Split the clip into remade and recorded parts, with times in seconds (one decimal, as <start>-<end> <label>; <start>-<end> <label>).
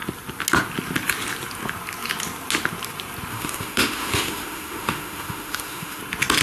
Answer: 0.0-3.3 recorded; 3.3-6.0 remade; 6.0-6.4 recorded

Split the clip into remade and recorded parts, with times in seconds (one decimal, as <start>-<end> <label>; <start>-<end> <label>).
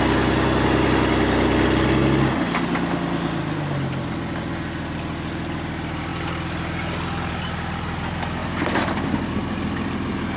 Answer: 0.0-10.4 recorded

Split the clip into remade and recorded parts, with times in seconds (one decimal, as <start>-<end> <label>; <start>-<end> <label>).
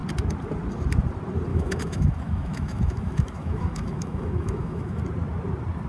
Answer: 0.0-1.5 recorded; 1.5-5.0 remade; 5.0-5.9 recorded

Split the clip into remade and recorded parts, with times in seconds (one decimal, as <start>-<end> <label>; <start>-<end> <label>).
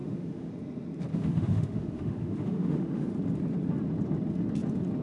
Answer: 0.0-0.5 remade; 0.5-1.1 recorded; 1.1-3.1 remade; 3.1-5.0 recorded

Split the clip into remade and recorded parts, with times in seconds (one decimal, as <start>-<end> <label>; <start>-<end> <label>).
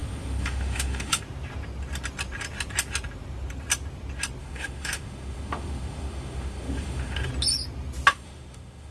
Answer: 0.0-1.2 remade; 1.2-4.4 recorded; 4.4-7.3 remade; 7.3-8.1 recorded; 8.1-8.9 remade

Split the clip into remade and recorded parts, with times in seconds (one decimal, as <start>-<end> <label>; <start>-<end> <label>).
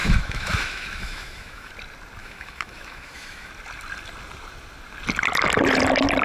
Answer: 0.0-1.7 remade; 1.7-2.2 recorded; 2.2-3.5 remade; 3.5-6.2 recorded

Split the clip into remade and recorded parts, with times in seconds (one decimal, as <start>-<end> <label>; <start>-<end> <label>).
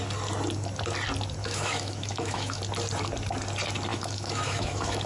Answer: 0.0-1.4 recorded; 1.4-2.6 remade; 2.6-3.9 recorded; 3.9-5.1 remade